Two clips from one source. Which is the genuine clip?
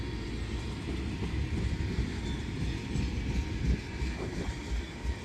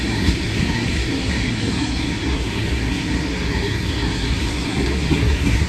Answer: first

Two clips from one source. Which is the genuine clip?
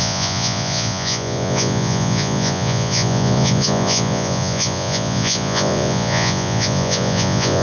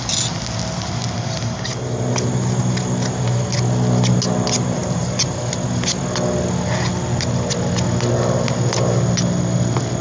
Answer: second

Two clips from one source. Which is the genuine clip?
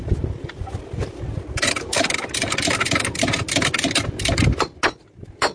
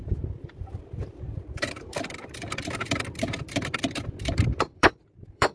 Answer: first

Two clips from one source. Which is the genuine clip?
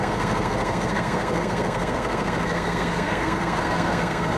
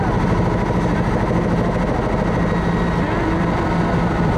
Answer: second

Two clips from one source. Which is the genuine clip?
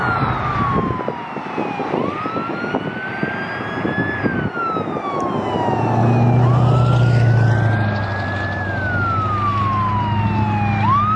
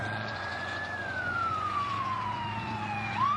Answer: first